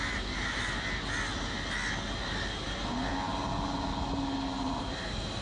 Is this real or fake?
real